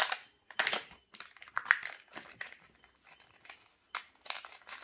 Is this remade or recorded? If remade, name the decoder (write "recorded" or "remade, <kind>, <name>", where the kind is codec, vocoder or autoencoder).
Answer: recorded